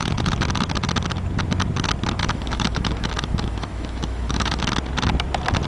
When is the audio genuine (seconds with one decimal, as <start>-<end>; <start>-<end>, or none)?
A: 0.0-2.2; 4.6-5.7